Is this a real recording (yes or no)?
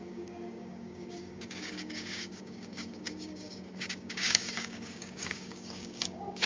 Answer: no